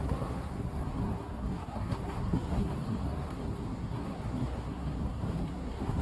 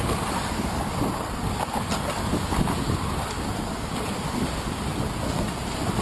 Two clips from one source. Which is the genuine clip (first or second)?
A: second